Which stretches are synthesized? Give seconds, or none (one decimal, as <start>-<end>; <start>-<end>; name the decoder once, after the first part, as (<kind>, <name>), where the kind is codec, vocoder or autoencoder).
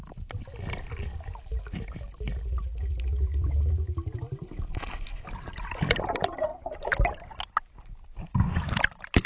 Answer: none